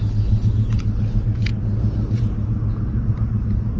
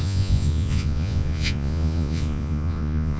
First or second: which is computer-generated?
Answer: second